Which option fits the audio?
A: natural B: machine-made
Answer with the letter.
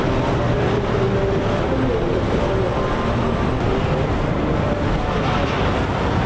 A